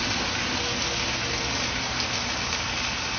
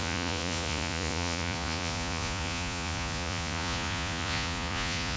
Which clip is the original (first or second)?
first